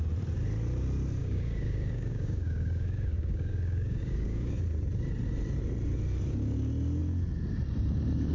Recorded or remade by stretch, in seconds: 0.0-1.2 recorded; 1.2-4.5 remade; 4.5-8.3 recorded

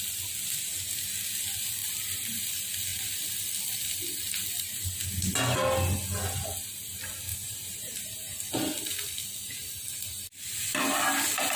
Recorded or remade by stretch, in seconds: 0.0-7.3 recorded; 7.3-8.5 remade; 8.5-11.6 recorded

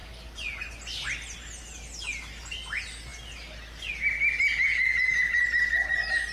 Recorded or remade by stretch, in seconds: 0.0-6.3 recorded

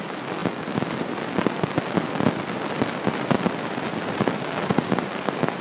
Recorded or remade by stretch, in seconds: 0.0-5.6 recorded